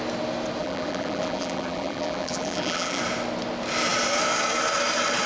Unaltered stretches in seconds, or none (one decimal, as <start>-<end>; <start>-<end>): 0.0-0.6; 3.0-5.3